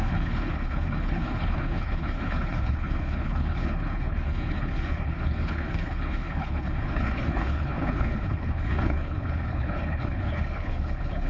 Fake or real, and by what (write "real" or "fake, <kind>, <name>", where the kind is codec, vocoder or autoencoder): fake, codec, HILCodec